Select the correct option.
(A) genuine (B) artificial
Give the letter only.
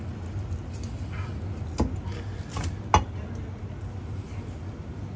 A